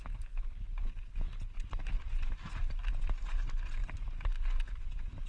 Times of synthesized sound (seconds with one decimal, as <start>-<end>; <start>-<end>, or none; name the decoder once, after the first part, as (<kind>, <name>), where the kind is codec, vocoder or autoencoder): 1.3-1.9 (vocoder, BigVGAN v2); 3.8-4.4